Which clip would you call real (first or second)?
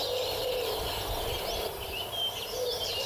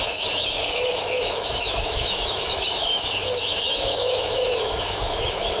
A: first